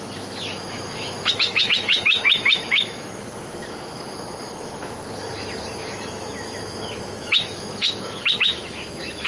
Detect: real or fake fake